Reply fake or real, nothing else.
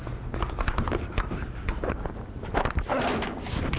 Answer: real